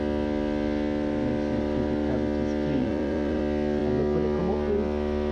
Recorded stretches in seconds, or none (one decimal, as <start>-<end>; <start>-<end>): 0.0-2.8; 3.4-5.3